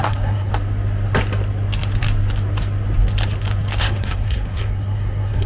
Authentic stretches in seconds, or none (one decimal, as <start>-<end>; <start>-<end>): 0.5-3.8